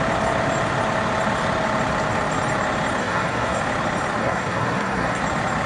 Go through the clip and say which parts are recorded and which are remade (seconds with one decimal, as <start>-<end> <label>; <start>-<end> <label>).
0.0-3.0 recorded; 3.0-3.6 remade; 3.6-4.2 recorded; 4.2-5.2 remade; 5.2-5.7 recorded